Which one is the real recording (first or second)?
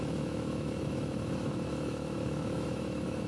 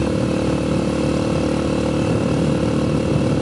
second